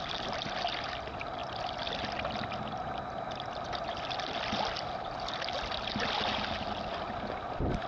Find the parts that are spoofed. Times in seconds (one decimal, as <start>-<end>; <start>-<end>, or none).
none